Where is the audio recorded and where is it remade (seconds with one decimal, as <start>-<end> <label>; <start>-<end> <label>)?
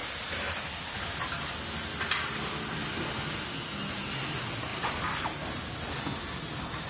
0.0-4.7 recorded; 4.7-5.7 remade; 5.7-6.9 recorded